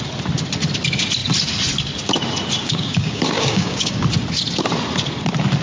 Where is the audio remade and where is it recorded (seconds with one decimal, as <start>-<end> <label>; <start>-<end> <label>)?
0.0-2.6 recorded; 2.6-4.0 remade; 4.0-5.6 recorded

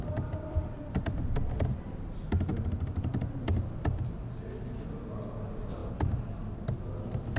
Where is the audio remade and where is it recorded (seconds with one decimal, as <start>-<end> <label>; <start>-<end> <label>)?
0.0-7.4 recorded

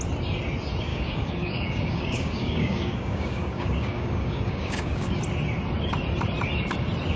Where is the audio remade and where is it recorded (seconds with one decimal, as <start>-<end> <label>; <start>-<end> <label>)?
0.0-0.9 recorded; 0.9-5.2 remade; 5.2-7.2 recorded

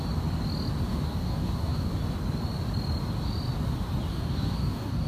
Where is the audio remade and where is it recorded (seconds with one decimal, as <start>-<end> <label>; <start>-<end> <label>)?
0.0-0.9 recorded; 0.9-1.9 remade; 1.9-4.1 recorded; 4.1-5.1 remade

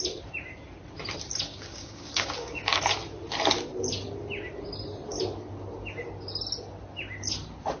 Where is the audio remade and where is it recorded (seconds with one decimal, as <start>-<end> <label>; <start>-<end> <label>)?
0.0-1.5 recorded; 1.5-2.8 remade; 2.8-7.8 recorded

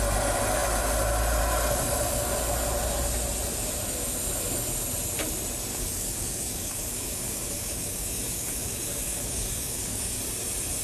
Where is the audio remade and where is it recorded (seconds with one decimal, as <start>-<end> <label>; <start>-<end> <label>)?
0.0-5.7 recorded; 5.7-10.2 remade; 10.2-10.8 recorded

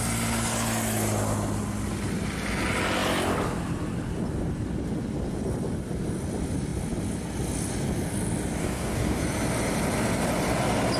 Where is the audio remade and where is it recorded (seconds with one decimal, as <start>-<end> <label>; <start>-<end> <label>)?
0.0-8.6 recorded; 8.6-9.2 remade; 9.2-11.0 recorded

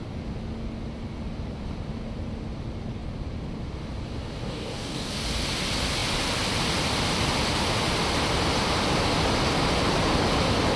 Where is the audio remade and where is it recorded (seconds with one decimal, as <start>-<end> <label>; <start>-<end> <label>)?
0.0-4.4 recorded; 4.4-5.1 remade; 5.1-10.8 recorded